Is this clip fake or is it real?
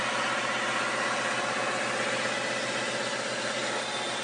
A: real